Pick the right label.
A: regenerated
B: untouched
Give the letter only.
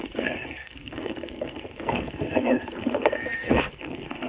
A